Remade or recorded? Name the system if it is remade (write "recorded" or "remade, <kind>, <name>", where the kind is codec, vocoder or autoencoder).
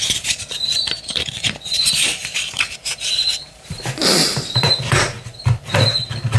remade, vocoder, BigVGAN v2